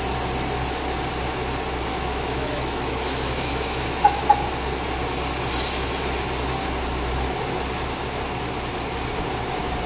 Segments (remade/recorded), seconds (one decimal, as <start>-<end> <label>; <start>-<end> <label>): 0.0-1.9 recorded; 1.9-4.2 remade; 4.2-9.9 recorded